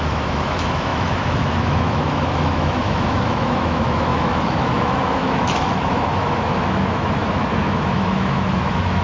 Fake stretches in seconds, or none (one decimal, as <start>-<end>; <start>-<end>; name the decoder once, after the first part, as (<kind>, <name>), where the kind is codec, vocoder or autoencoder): 0.0-9.0 (autoencoder, DAC-VAE)